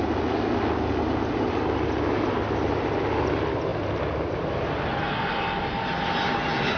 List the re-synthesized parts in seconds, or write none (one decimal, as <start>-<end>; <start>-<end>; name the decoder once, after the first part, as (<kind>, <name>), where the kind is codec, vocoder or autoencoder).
none